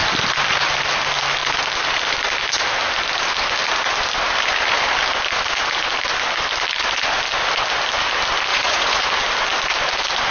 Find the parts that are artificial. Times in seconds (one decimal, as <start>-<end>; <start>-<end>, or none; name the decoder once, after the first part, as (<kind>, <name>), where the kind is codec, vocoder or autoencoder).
8.5-9.1 (vocoder, Vocos)